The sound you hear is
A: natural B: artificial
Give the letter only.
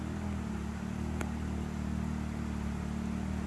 A